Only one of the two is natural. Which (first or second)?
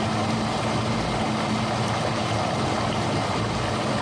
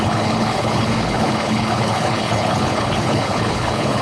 first